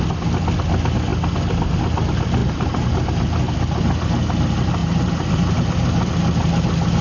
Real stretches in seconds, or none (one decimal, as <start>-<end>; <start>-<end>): 0.0-2.4; 2.9-4.8; 5.5-7.0

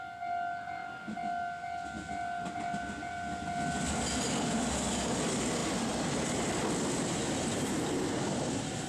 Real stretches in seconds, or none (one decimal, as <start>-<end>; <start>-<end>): 0.0-8.9

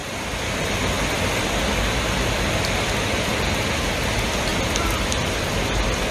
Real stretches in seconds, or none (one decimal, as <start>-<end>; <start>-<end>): 0.0-6.1

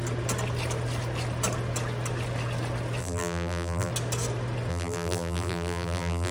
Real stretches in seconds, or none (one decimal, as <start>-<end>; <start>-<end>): 0.0-3.0; 3.9-4.7

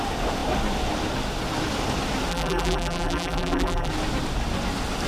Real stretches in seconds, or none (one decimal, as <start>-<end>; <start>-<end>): 0.0-2.3; 3.9-5.1